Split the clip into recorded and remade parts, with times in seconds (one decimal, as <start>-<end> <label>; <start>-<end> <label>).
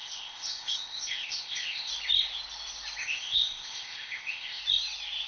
0.0-1.9 remade; 1.9-3.0 recorded; 3.0-4.6 remade; 4.6-5.3 recorded